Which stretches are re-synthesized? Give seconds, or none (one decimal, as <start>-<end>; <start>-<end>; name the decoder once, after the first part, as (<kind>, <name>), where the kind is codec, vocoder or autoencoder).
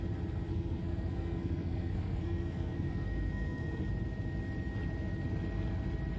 0.5-3.9 (codec, SNAC)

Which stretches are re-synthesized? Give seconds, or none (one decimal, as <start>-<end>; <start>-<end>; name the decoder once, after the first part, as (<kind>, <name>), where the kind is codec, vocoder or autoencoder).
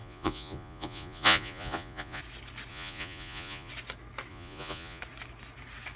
0.0-2.2 (vocoder, Vocos); 2.7-3.7; 4.3-5.0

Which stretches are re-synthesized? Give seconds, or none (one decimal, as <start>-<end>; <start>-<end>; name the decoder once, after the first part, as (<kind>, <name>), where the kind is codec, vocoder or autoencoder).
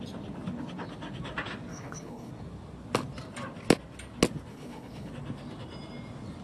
1.7-2.3 (codec, HILCodec); 4.5-5.1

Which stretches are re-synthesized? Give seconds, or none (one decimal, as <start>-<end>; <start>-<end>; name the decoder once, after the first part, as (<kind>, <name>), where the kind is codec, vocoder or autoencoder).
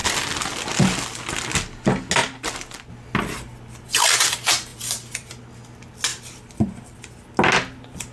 0.0-0.5 (vocoder, BigVGAN v2); 2.2-2.9; 4.7-5.3; 6.1-7.0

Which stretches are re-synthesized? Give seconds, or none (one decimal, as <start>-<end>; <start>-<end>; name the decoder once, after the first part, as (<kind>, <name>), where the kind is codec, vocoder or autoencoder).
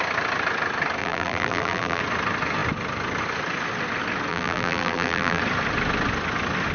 1.0-2.0 (vocoder, BigVGAN v2); 4.3-5.4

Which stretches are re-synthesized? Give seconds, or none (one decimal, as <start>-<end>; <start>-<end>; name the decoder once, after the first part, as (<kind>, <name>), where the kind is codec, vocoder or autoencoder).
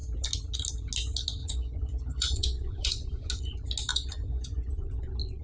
1.4-3.3 (vocoder, Vocos); 3.9-4.9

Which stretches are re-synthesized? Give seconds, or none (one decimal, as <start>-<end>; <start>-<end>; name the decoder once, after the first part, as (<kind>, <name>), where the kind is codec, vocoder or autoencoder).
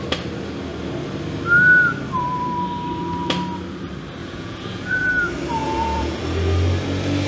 4.2-5.1 (vocoder, Vocos); 5.6-6.2